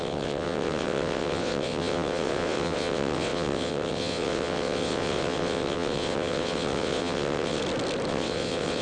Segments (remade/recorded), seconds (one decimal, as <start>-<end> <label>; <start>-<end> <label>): 0.0-7.6 remade; 7.6-8.1 recorded; 8.1-8.8 remade